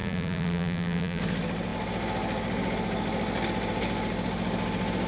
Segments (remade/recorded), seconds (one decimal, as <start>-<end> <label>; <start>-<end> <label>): 0.0-1.2 remade; 1.2-5.1 recorded